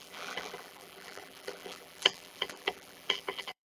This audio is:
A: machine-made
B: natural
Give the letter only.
A